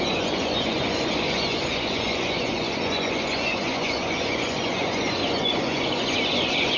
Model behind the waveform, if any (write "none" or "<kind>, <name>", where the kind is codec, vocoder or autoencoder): vocoder, Vocos